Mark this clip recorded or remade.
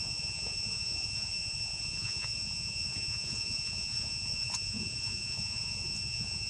remade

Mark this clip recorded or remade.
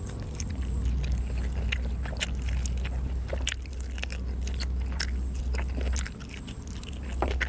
recorded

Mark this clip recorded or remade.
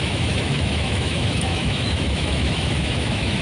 remade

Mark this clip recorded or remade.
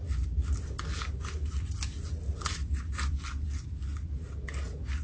recorded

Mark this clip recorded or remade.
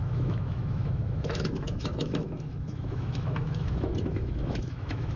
remade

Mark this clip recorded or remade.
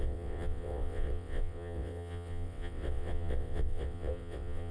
remade